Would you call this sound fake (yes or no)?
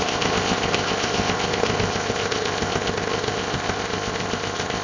yes